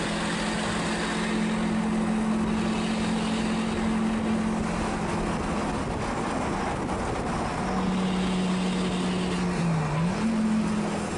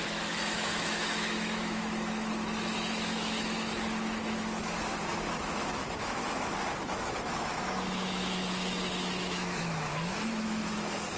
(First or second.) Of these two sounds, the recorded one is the first